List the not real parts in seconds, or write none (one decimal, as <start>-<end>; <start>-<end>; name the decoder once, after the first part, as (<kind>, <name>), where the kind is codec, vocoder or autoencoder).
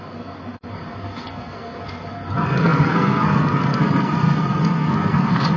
0.0-5.6 (codec, SNAC)